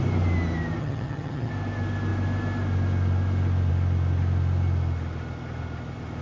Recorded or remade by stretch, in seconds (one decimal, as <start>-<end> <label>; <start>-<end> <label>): 0.0-0.8 recorded; 0.8-1.5 remade; 1.5-6.2 recorded